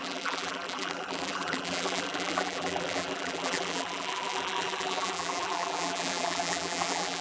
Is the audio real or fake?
fake